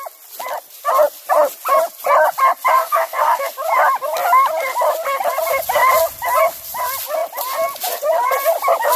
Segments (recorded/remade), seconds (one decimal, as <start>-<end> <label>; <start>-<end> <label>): 0.0-2.7 recorded; 2.7-3.4 remade; 3.4-9.0 recorded